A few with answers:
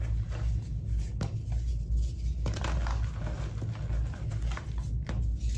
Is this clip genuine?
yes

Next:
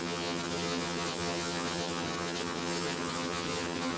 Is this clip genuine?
no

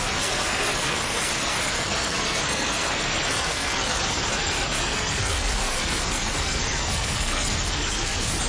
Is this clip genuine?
no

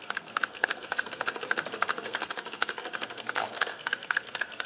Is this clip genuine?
no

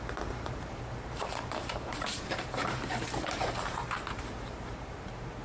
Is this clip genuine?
no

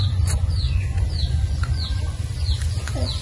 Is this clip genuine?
no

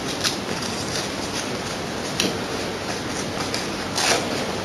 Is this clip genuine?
yes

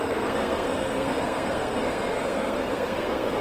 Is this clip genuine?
no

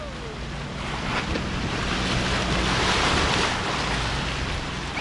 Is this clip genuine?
yes